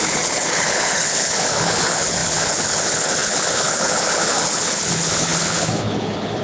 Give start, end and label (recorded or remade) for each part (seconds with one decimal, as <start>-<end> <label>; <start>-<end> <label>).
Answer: 0.0-6.4 remade